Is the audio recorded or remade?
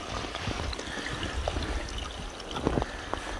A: recorded